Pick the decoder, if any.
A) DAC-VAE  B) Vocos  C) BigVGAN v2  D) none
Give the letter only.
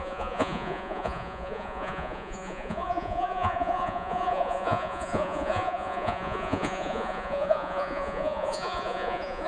B